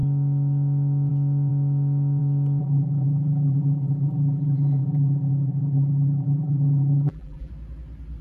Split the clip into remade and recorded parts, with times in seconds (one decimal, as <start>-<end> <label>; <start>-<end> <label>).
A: 0.0-2.6 recorded; 2.6-7.5 remade; 7.5-8.2 recorded